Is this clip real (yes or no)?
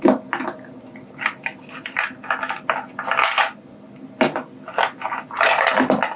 yes